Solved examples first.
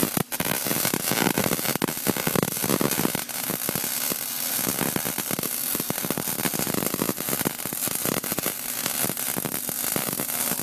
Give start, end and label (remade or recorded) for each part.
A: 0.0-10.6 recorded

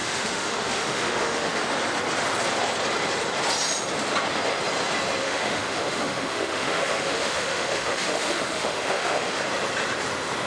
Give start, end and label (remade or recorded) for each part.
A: 0.0-1.6 remade; 1.6-5.2 recorded; 5.2-9.4 remade; 9.4-10.5 recorded

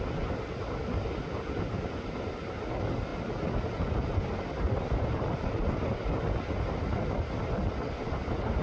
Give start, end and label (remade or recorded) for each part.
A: 0.0-8.6 recorded